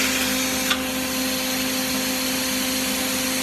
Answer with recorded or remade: recorded